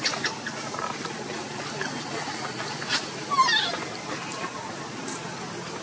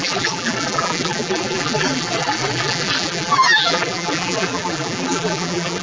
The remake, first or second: second